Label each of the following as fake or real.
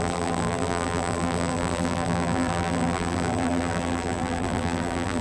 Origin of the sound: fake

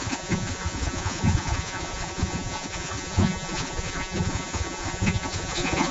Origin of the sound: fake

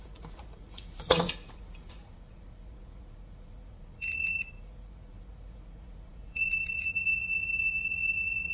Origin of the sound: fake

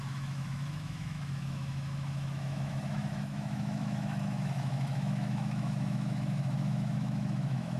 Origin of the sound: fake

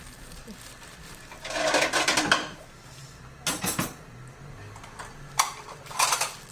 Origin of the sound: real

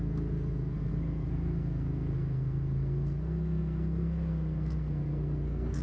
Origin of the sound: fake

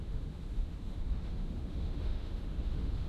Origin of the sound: fake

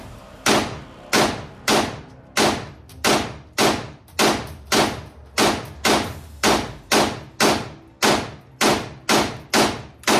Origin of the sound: real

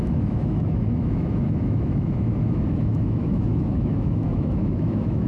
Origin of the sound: fake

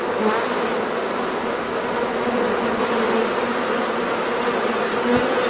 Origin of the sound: real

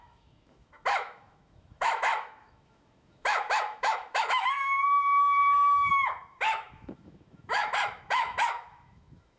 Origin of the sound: fake